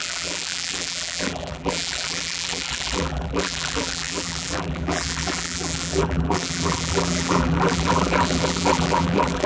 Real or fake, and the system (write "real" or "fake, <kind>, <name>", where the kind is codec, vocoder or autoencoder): fake, vocoder, BigVGAN v2